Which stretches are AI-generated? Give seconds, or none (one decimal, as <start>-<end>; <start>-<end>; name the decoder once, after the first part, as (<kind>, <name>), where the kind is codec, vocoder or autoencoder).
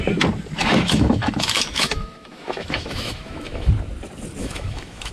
0.6-3.7 (autoencoder, DAC-VAE); 4.4-5.1